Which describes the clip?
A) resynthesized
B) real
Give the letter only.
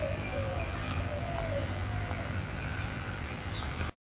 A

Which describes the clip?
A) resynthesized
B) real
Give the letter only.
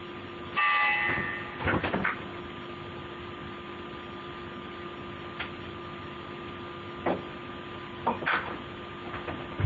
B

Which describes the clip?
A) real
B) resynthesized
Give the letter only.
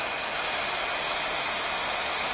A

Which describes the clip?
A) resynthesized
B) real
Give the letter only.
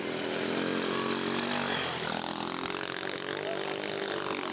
B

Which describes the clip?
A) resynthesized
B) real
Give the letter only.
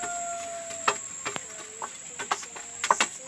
B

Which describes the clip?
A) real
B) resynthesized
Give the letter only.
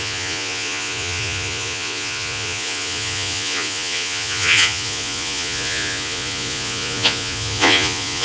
B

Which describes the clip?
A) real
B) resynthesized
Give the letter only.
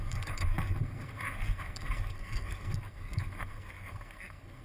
B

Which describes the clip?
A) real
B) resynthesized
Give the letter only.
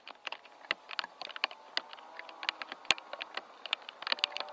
A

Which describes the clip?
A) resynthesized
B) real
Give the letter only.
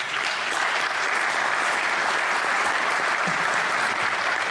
B